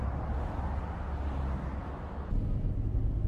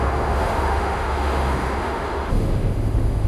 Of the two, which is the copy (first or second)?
second